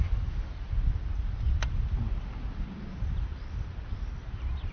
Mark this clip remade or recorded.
recorded